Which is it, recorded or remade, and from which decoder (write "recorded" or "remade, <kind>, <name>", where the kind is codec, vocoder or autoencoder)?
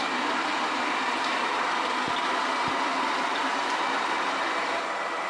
remade, vocoder, BigVGAN v2